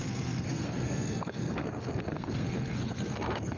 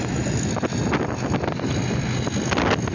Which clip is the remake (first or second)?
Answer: first